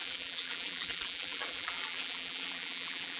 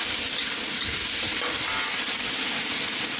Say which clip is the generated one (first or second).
first